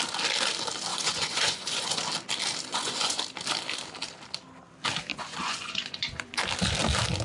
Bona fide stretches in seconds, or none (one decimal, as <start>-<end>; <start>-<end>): 0.0-0.9; 2.0-2.7; 3.2-5.1; 6.4-7.2